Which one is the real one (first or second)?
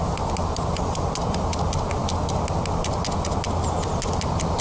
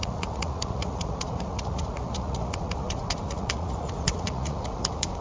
first